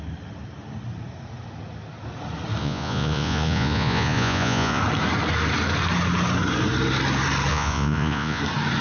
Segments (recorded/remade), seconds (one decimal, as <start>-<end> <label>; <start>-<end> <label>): 0.0-2.6 recorded; 2.6-4.8 remade; 4.8-7.5 recorded; 7.5-8.4 remade; 8.4-8.8 recorded